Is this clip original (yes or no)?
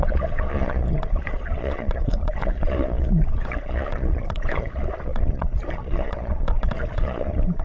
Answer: no